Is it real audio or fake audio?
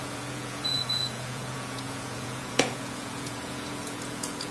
fake